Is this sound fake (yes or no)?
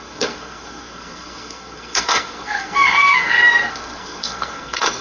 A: yes